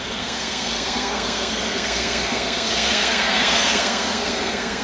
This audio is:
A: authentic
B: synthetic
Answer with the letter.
B